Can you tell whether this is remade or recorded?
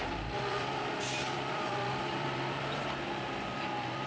remade